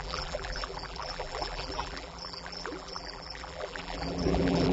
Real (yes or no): no